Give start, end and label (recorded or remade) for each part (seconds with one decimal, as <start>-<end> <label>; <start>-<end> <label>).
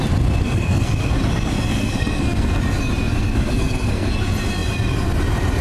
0.0-0.4 recorded; 0.4-1.1 remade; 1.1-1.7 recorded; 1.7-2.6 remade; 2.6-3.2 recorded; 3.2-4.1 remade; 4.1-5.6 recorded